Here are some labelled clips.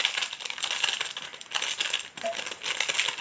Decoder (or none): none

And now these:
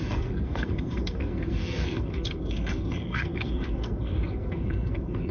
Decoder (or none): codec, SNAC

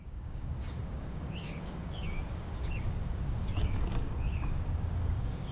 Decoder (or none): codec, DAC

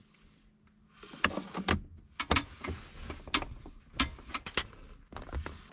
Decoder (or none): none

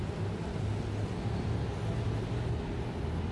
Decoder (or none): none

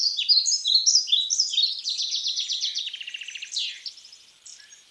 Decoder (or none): none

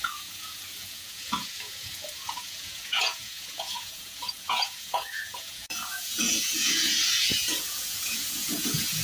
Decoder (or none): vocoder, Vocos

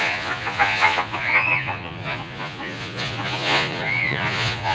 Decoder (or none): vocoder, Vocos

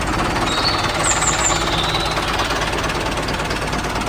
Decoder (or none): none